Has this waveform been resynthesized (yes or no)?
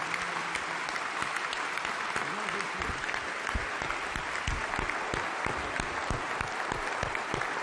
no